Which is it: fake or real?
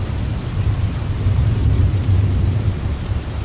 fake